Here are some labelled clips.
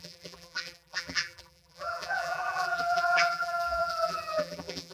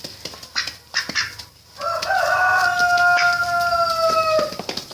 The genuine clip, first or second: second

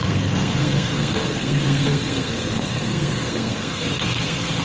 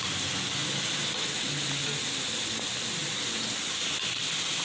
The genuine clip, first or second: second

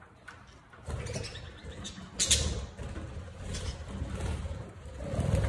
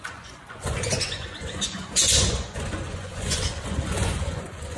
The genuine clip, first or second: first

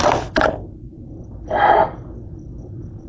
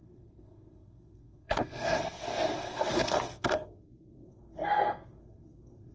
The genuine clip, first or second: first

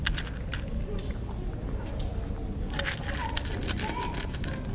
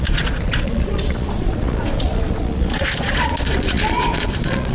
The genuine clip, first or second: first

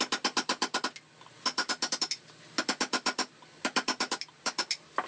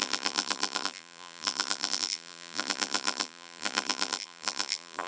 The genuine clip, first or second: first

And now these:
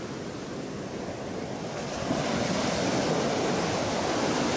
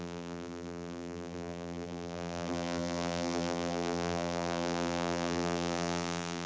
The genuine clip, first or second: first